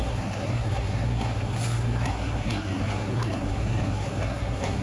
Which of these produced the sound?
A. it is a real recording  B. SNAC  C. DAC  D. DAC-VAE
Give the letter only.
B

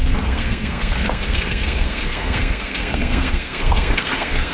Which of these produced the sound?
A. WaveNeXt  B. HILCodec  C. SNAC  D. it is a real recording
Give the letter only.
C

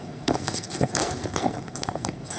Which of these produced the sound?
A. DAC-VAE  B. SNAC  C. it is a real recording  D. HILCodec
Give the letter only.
B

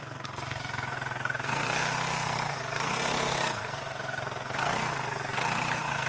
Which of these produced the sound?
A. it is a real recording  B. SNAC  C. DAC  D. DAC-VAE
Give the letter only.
B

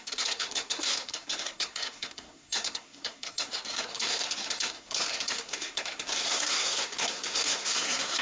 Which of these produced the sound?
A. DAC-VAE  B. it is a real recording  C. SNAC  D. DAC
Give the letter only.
C